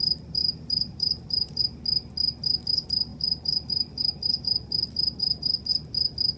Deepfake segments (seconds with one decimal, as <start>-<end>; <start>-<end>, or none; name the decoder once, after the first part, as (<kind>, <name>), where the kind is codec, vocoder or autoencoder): 0.4-1.6 (vocoder, BigVGAN v2); 3.1-5.7